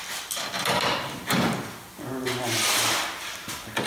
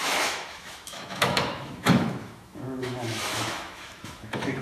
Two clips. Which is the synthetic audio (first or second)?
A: second